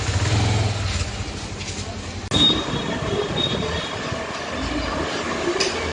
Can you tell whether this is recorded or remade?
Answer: recorded